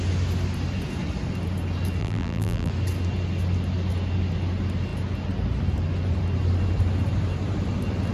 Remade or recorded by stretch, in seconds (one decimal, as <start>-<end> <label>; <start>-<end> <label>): 0.0-2.0 recorded; 2.0-2.7 remade; 2.7-8.1 recorded